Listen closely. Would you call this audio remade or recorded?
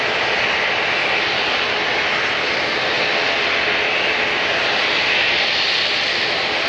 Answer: recorded